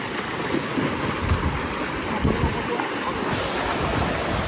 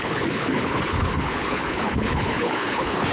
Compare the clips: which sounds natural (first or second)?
first